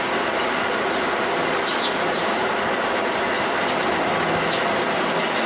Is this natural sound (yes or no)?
yes